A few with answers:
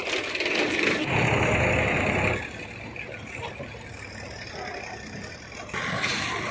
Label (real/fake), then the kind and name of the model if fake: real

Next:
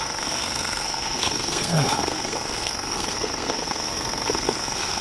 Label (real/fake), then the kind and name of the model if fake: fake, codec, SNAC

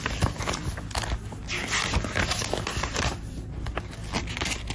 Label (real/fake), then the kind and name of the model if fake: real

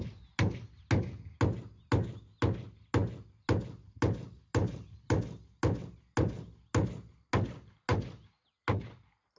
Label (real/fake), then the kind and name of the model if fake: real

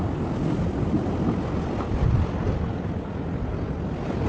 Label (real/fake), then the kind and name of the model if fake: real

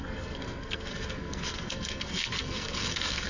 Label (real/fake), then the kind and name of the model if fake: fake, codec, SNAC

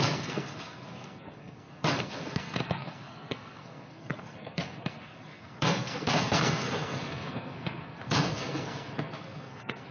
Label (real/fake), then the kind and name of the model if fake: fake, codec, SNAC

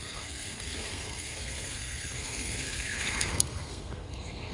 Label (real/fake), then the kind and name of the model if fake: fake, codec, SNAC